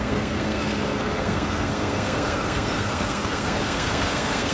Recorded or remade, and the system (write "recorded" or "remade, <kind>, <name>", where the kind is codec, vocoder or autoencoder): remade, codec, SNAC